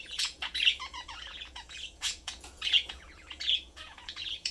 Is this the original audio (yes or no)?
no